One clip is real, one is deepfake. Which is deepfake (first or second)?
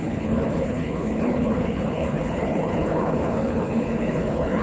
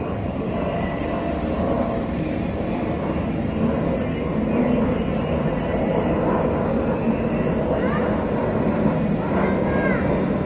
first